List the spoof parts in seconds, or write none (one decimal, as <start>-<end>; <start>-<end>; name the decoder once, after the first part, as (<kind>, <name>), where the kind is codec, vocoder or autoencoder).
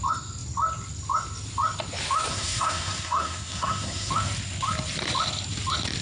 2.3-4.1 (codec, SNAC)